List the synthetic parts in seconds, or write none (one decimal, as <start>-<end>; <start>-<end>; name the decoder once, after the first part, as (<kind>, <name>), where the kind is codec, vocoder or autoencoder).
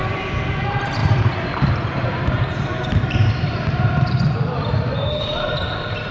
0.6-6.1 (vocoder, BigVGAN v2)